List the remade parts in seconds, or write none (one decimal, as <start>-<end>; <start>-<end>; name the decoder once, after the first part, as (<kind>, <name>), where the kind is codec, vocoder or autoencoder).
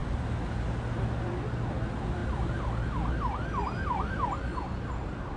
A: none